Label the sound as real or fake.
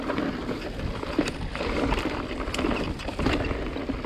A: real